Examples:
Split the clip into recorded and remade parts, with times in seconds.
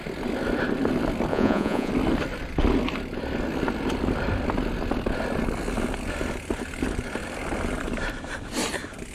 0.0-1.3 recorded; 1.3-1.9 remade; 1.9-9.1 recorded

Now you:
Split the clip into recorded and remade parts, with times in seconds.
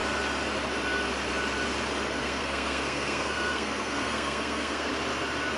0.0-2.2 recorded; 2.2-4.9 remade; 4.9-5.6 recorded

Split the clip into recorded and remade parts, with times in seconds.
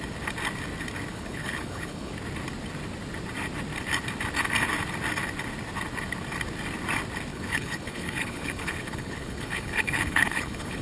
0.0-1.1 recorded; 1.1-2.1 remade; 2.1-7.3 recorded; 7.3-10.8 remade